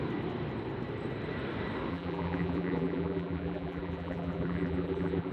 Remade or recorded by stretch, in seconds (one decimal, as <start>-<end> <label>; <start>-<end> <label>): 0.0-1.9 recorded; 1.9-5.3 remade